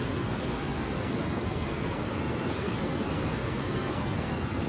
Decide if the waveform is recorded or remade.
remade